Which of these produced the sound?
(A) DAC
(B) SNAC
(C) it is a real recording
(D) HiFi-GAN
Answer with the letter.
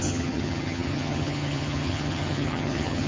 D